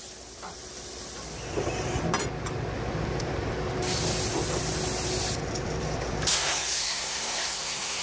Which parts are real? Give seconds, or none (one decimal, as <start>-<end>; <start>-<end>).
0.0-6.3